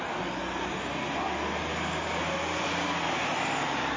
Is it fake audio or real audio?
real